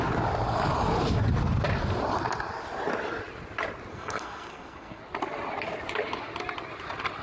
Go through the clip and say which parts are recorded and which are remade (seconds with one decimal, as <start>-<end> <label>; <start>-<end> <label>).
0.0-3.9 recorded; 3.9-5.0 remade; 5.0-7.2 recorded